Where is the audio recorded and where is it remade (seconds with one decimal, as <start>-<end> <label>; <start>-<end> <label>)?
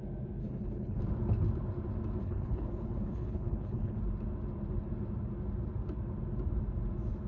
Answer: 0.0-0.4 recorded; 0.4-1.0 remade; 1.0-2.2 recorded; 2.2-4.0 remade; 4.0-7.3 recorded